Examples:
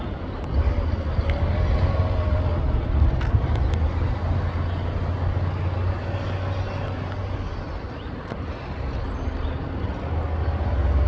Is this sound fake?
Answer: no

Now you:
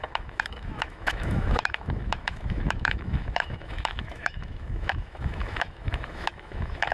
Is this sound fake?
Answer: yes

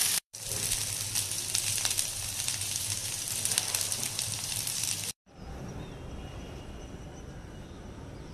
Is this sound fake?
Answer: yes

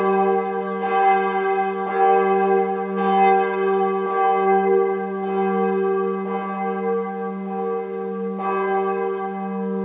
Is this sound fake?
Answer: no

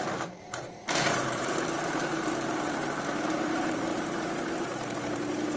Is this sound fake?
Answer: yes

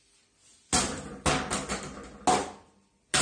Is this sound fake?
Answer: no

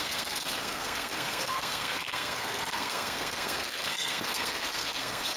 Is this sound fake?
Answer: yes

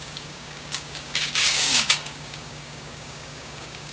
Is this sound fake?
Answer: yes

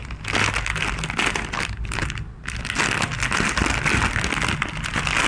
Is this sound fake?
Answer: no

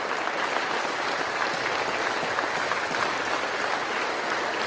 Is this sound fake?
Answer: no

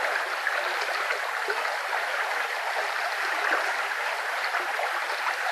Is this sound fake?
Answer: no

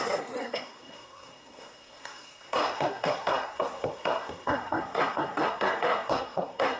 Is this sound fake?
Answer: yes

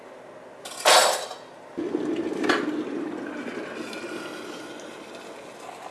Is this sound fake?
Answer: no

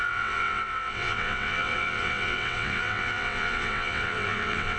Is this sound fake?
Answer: yes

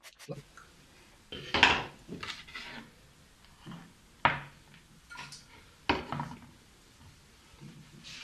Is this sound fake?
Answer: no